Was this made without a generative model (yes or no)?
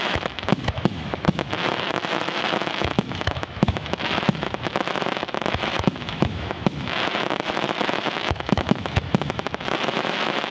no